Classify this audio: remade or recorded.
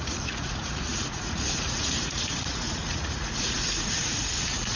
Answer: remade